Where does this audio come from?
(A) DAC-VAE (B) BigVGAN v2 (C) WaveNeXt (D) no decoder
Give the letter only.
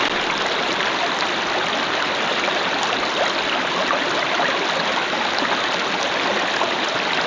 D